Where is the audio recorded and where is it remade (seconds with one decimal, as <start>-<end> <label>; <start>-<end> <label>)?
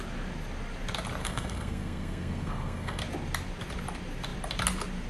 0.0-1.2 recorded; 1.2-3.0 remade; 3.0-5.1 recorded